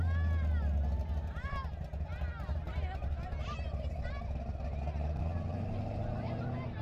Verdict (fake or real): real